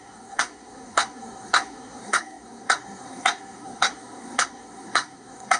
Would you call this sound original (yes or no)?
no